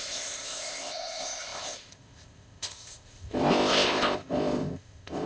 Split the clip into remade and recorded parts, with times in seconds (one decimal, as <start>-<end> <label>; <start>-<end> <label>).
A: 0.0-5.3 remade